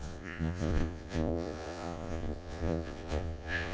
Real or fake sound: fake